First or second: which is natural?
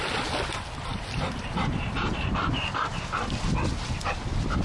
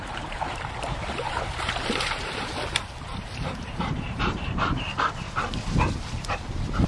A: first